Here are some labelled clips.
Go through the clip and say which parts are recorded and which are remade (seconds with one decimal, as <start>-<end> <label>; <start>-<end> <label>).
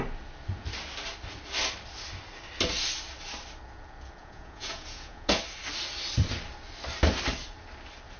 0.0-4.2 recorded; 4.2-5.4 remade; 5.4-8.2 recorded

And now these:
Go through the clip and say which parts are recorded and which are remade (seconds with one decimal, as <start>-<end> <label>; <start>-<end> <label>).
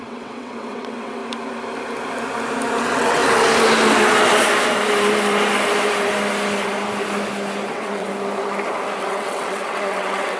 0.0-1.2 remade; 1.2-2.8 recorded; 2.8-3.2 remade; 3.2-7.7 recorded; 7.7-8.1 remade; 8.1-9.0 recorded; 9.0-10.4 remade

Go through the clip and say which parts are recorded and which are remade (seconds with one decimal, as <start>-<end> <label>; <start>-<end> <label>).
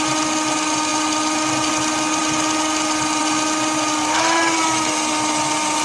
0.0-5.8 recorded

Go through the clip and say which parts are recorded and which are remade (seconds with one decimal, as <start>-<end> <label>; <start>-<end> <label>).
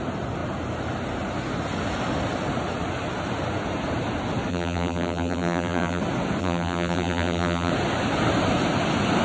0.0-4.5 recorded; 4.5-6.0 remade; 6.0-6.4 recorded; 6.4-7.7 remade; 7.7-9.2 recorded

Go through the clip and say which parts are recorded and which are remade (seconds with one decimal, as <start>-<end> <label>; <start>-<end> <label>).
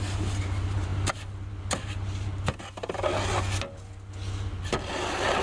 0.0-5.4 recorded